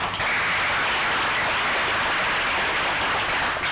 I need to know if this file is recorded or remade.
recorded